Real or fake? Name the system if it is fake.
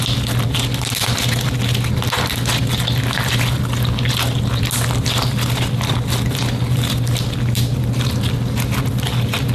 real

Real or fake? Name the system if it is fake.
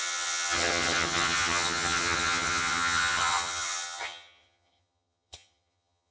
fake, vocoder, HiFi-GAN